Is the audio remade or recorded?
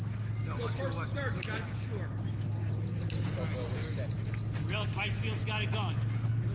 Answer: recorded